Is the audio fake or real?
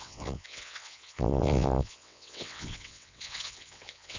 fake